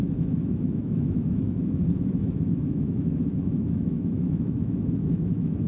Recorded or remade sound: remade